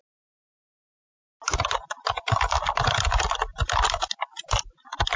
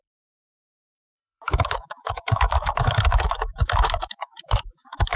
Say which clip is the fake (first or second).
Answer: second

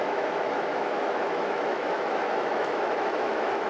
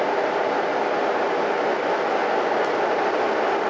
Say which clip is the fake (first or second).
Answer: first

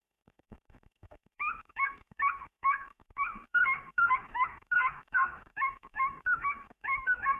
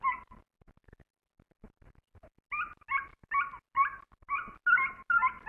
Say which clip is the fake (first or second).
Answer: first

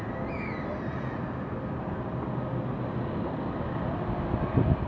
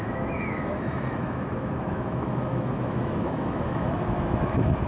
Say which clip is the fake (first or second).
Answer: second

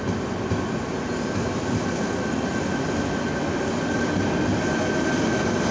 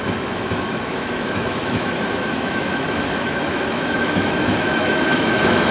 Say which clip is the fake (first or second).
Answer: second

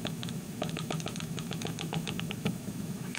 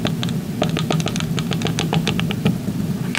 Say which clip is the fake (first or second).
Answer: first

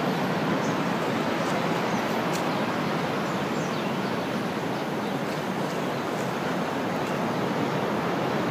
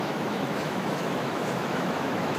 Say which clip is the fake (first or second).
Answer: second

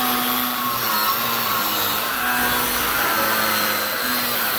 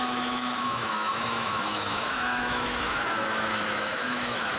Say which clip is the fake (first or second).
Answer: second